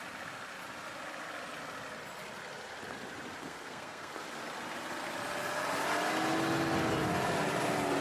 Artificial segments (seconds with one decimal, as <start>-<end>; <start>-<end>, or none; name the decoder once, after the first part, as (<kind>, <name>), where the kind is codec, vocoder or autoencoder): 3.4-4.1 (codec, SNAC)